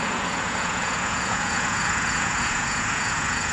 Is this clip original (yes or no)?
no